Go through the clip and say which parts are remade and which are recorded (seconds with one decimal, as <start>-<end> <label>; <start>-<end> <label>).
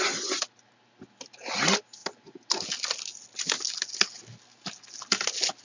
0.0-5.6 recorded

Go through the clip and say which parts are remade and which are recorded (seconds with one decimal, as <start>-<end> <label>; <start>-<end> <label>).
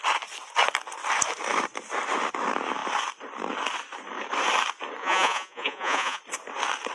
0.0-5.0 recorded; 5.0-6.2 remade; 6.2-6.9 recorded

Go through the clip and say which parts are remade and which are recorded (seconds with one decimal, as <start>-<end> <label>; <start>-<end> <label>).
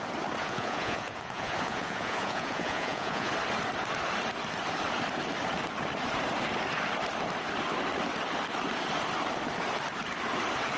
0.0-0.4 recorded; 0.4-3.3 remade; 3.3-10.8 recorded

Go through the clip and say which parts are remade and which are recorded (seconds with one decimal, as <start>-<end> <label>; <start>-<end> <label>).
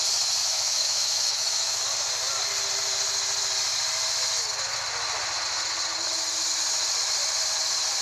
0.0-0.4 recorded; 0.4-1.8 remade; 1.8-8.0 recorded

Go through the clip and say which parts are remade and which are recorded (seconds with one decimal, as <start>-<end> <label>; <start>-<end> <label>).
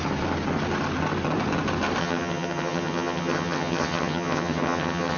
0.0-2.0 recorded; 2.0-5.2 remade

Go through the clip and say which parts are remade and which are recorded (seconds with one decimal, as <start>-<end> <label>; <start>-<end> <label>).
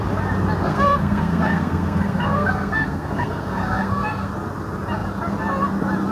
0.0-0.6 recorded; 0.6-4.3 remade; 4.3-6.1 recorded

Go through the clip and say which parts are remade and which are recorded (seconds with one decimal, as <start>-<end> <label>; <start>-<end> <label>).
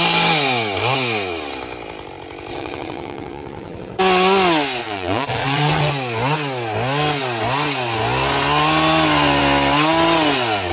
0.0-2.5 recorded; 2.5-4.0 remade; 4.0-4.8 recorded; 4.8-5.9 remade; 5.9-10.7 recorded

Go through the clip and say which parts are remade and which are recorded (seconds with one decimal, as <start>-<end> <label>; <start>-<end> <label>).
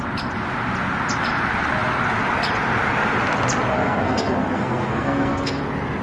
0.0-3.7 recorded; 3.7-5.6 remade; 5.6-6.0 recorded